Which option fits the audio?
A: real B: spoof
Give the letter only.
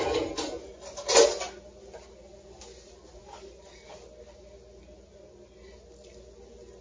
A